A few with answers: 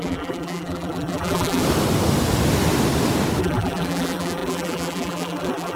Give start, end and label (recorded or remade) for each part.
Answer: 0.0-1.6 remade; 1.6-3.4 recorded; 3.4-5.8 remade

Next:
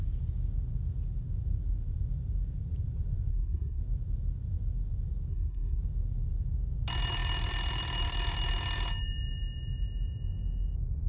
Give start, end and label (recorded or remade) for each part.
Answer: 0.0-3.3 recorded; 3.3-3.8 remade; 3.8-5.3 recorded; 5.3-5.8 remade; 5.8-11.1 recorded

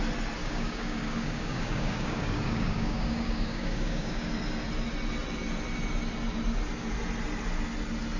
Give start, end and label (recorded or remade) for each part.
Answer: 0.0-0.4 recorded; 0.4-4.3 remade; 4.3-8.2 recorded

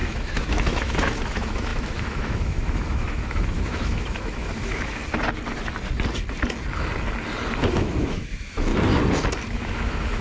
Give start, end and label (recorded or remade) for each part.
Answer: 0.0-5.0 remade; 5.0-7.7 recorded; 7.7-8.7 remade; 8.7-9.5 recorded; 9.5-10.2 remade

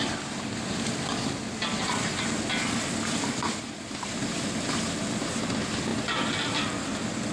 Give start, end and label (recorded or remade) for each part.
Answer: 0.0-7.3 remade